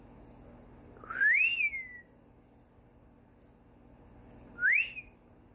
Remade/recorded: recorded